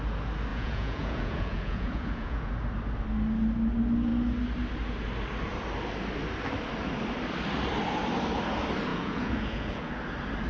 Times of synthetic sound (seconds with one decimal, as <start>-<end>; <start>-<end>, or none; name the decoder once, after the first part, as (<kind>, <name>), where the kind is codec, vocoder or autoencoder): 0.5-2.5 (vocoder, Vocos); 8.9-9.9